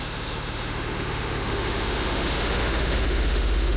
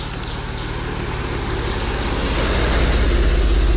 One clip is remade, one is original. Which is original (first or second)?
second